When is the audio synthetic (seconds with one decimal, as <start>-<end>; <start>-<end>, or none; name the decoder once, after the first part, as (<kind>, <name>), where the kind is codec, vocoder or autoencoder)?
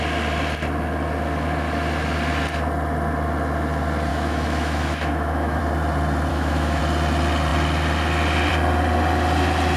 4.1-5.6 (autoencoder, DAC-VAE); 6.3-6.8